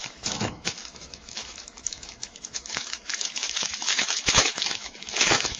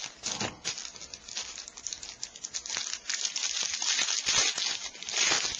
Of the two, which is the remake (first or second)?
first